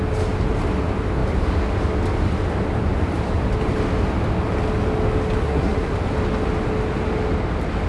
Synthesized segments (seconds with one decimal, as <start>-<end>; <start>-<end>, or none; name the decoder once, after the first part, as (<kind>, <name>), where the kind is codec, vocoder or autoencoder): 5.4-5.9 (codec, SNAC)